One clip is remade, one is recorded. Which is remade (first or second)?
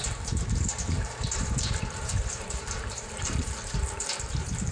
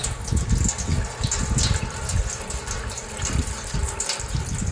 first